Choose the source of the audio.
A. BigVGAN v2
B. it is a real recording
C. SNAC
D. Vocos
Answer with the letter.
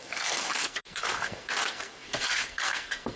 C